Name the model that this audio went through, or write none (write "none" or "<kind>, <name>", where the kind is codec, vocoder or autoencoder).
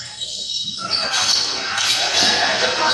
codec, SNAC